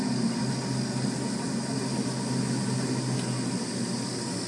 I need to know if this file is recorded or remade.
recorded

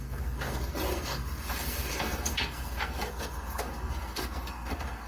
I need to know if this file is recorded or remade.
remade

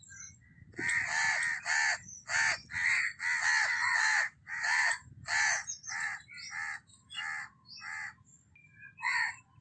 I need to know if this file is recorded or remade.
recorded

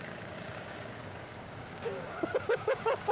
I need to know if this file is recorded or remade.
remade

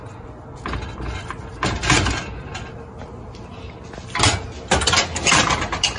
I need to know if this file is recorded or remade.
recorded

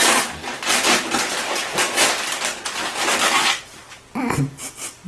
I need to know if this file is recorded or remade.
recorded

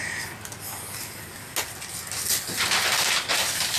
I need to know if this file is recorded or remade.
recorded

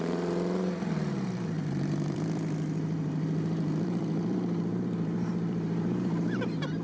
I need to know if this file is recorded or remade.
remade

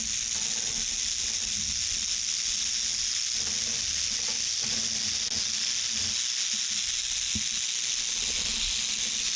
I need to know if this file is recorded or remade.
recorded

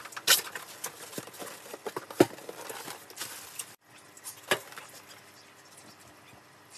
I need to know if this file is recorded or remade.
recorded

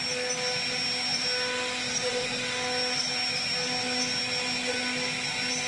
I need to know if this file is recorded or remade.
recorded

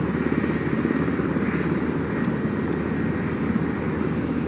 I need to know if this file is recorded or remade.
recorded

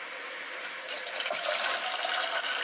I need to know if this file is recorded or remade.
recorded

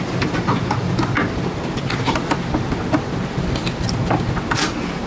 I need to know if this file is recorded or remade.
recorded